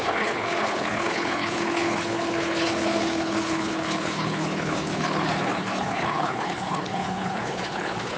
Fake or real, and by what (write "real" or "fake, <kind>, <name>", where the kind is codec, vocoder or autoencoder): fake, codec, HILCodec